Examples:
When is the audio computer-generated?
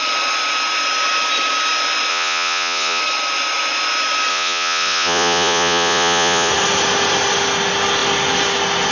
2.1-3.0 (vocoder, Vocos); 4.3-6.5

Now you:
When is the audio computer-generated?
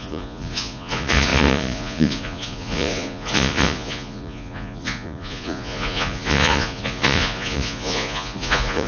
0.0-8.9 (vocoder, Vocos)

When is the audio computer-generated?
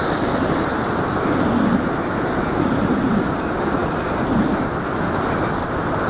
none